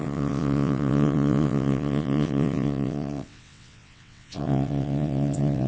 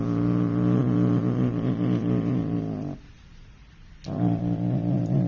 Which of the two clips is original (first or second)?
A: second